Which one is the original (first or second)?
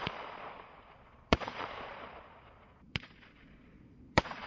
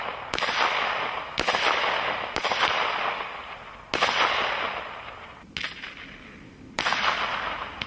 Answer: second